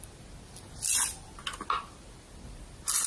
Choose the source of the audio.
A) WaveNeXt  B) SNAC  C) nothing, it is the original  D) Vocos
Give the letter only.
C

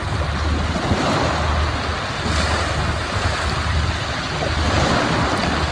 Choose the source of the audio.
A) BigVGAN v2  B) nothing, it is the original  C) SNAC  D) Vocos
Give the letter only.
B